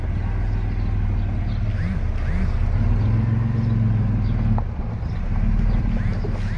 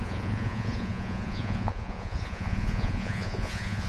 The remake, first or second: second